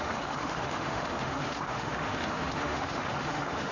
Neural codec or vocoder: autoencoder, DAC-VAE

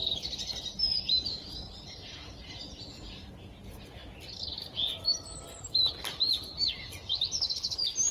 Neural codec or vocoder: none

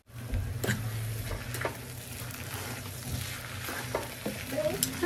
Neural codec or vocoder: none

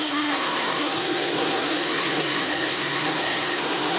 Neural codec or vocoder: codec, SNAC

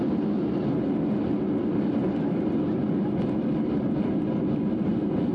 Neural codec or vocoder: none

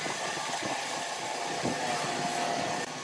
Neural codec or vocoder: none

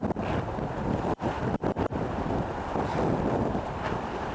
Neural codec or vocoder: none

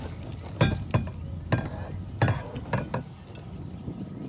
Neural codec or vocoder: none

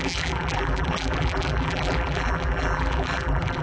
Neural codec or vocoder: vocoder, BigVGAN v2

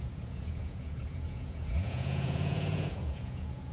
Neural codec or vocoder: vocoder, Vocos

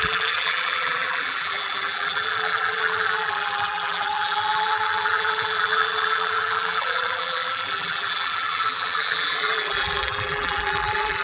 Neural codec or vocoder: vocoder, BigVGAN v2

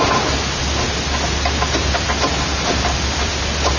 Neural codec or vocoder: none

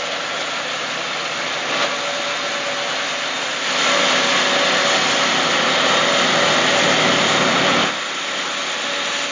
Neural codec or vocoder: none